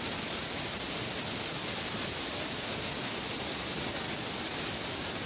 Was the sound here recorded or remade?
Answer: recorded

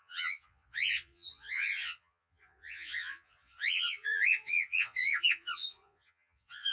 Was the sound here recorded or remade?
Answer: remade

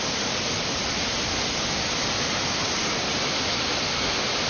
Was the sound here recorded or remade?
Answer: recorded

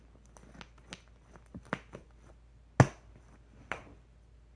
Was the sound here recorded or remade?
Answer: recorded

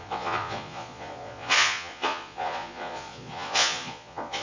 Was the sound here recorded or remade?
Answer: remade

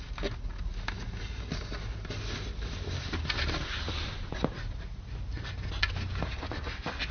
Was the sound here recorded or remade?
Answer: recorded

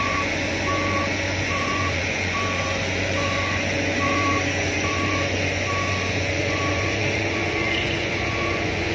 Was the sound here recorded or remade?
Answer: remade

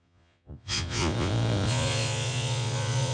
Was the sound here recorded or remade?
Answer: remade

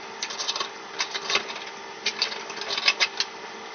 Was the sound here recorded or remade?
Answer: recorded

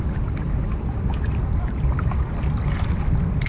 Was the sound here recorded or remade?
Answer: recorded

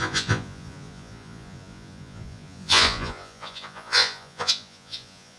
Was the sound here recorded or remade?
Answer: remade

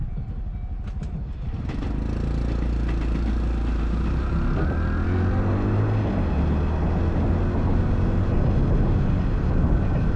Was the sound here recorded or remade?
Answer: recorded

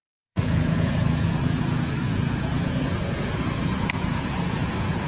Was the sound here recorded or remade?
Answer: remade